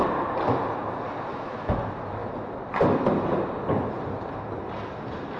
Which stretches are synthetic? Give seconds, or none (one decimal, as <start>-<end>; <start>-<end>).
1.3-1.8